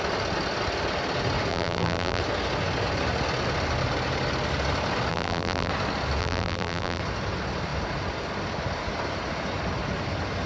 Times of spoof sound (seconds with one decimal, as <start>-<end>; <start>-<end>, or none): 1.5-2.2; 5.1-5.7; 6.2-7.0